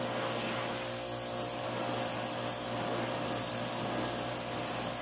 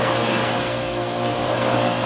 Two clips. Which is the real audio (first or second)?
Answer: first